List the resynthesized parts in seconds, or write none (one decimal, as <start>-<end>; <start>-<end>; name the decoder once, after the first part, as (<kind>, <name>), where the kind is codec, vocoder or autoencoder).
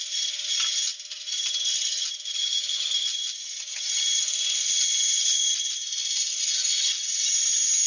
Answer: none